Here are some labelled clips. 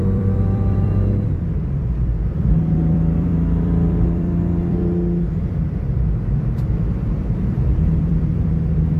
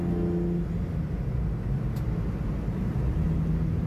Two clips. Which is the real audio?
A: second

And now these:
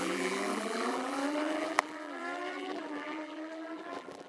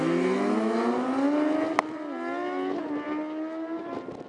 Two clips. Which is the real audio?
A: second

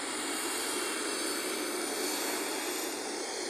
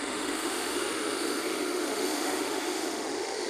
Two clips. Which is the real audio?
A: first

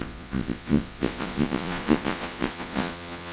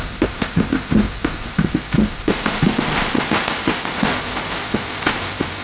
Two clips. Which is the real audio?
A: second